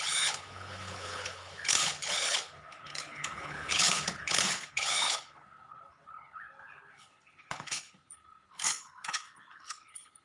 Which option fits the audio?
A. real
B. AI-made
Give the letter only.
B